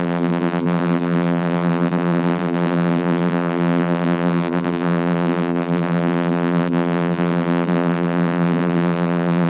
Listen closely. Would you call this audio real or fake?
fake